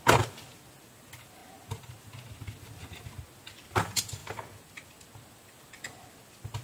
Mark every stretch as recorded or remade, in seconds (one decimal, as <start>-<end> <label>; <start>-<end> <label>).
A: 0.0-6.6 recorded